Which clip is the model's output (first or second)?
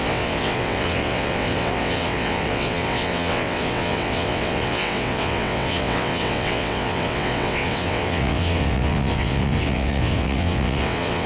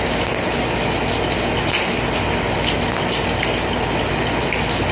first